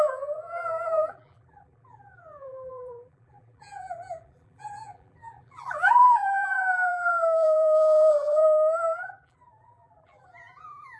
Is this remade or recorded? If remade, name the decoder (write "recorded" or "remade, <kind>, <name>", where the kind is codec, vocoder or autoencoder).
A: remade, vocoder, BigVGAN v2